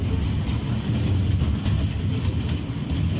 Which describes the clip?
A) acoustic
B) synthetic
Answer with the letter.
A